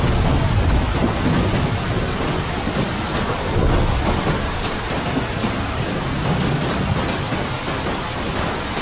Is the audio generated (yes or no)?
no